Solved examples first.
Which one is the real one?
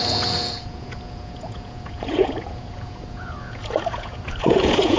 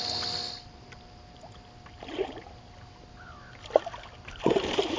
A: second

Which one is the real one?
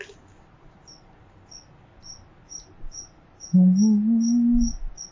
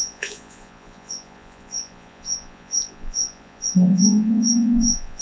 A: first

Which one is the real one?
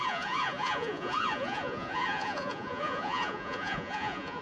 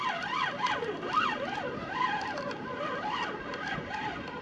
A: second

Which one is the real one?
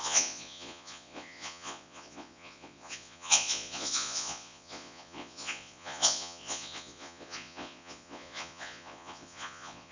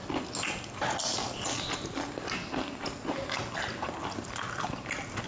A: second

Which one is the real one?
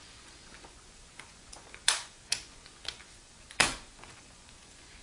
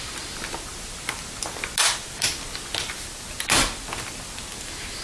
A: second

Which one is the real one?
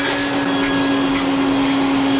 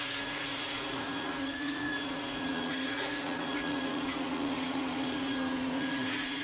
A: first